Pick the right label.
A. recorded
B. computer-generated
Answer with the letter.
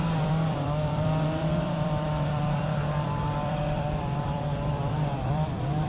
B